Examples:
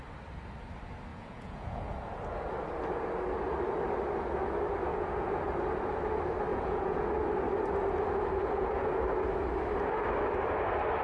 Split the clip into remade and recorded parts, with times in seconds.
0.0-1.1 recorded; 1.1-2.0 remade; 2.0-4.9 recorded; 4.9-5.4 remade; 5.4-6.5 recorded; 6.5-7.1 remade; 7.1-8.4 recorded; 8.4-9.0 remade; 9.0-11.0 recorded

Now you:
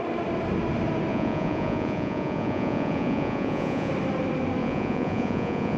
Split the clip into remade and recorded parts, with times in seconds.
0.0-1.1 recorded; 1.1-3.9 remade; 3.9-4.6 recorded; 4.6-5.8 remade